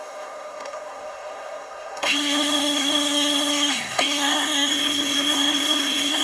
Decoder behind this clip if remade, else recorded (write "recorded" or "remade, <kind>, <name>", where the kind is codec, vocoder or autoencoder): remade, codec, SNAC